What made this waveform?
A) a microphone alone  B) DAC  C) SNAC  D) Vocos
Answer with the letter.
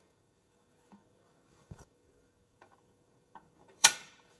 B